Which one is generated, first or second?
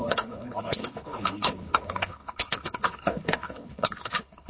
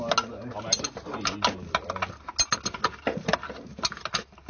first